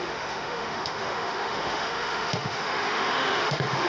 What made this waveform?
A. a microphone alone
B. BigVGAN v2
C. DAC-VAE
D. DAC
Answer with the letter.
C